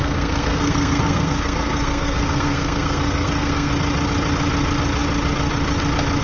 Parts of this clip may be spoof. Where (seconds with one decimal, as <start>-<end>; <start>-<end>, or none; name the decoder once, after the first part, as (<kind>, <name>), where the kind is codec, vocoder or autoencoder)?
0.0-3.7 (codec, SNAC)

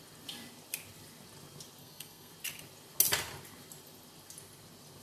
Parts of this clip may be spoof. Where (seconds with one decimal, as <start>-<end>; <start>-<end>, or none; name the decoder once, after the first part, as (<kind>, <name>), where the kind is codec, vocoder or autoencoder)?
1.8-2.3 (codec, SNAC)

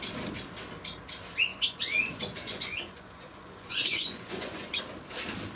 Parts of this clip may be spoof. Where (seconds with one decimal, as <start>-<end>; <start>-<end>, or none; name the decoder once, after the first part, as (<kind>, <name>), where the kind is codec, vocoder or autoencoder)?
1.5-4.8 (vocoder, Vocos)

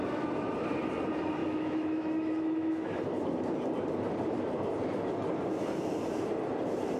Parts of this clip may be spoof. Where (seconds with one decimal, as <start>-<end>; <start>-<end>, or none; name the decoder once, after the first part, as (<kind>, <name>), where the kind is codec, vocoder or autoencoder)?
1.4-3.0 (autoencoder, DAC-VAE)

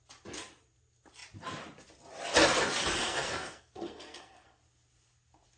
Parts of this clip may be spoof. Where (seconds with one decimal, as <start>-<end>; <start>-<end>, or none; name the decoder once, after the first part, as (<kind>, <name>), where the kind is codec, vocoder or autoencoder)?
3.0-4.6 (codec, SNAC)

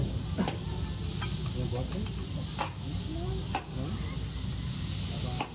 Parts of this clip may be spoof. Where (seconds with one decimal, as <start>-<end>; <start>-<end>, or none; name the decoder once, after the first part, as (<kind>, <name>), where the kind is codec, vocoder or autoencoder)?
none

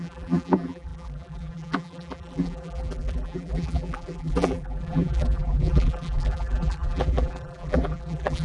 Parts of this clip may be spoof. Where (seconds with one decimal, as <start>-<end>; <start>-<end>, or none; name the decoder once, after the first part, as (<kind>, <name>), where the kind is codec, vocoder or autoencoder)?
0.0-8.4 (vocoder, BigVGAN v2)